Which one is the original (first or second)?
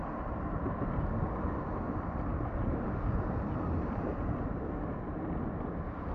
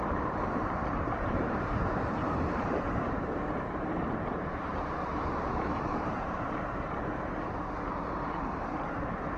first